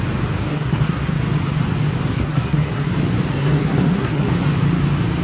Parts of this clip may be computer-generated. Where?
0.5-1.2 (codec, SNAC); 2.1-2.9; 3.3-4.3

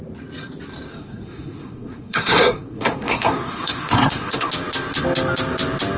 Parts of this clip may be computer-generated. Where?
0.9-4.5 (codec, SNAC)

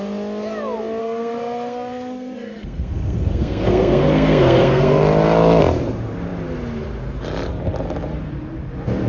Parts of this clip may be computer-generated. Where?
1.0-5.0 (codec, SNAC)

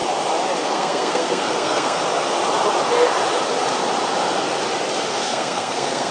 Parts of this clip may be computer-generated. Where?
0.6-2.0 (codec, SNAC); 5.1-6.1

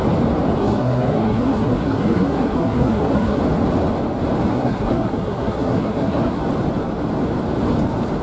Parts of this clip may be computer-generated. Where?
0.6-3.4 (codec, SNAC); 4.5-6.4

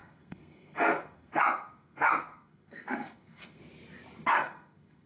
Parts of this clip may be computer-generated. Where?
0.0-3.6 (codec, SNAC); 4.3-5.1

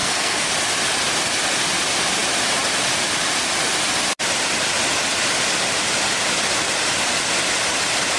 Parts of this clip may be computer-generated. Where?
0.0-0.5 (codec, SNAC)